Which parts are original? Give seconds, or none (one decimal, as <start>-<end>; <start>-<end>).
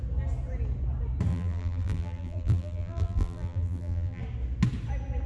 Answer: 0.0-1.3; 4.2-5.3